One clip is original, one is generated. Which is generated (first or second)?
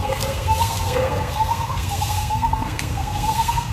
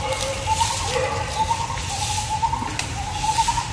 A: first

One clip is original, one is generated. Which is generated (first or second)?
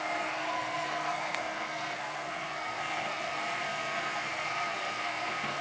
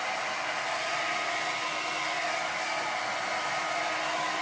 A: first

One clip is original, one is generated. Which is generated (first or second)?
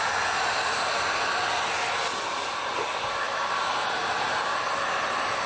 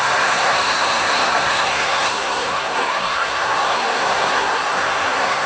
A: second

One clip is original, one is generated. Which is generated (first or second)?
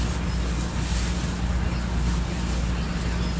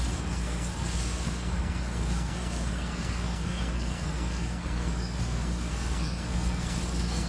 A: second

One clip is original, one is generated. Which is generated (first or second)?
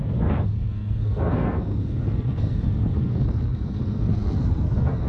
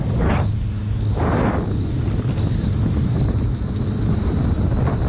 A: first